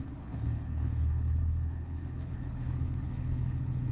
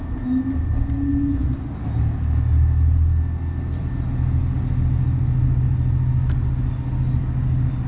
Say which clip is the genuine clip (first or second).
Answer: second